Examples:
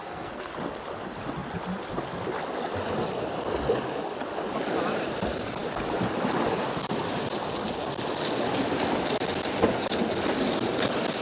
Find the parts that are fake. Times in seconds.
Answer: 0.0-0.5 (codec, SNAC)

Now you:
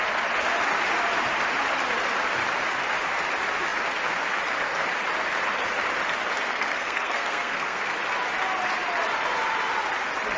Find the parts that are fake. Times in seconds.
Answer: 6.5-7.9 (codec, SNAC)

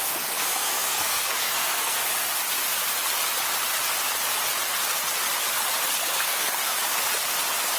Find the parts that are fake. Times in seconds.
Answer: 0.0-2.0 (codec, SNAC); 6.0-6.7

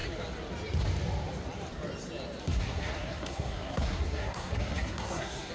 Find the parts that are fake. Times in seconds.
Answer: 2.4-5.5 (codec, SNAC)